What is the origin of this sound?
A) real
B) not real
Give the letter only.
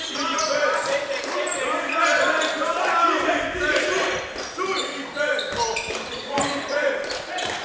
A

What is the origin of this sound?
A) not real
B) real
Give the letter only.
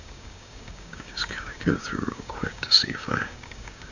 A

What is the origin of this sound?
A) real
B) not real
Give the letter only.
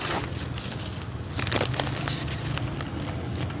A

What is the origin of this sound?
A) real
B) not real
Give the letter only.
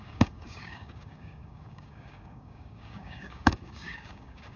B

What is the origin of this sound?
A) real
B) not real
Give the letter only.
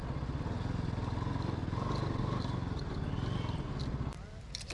A